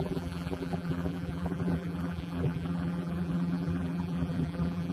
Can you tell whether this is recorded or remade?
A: remade